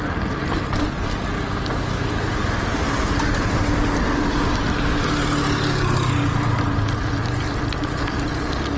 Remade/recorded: recorded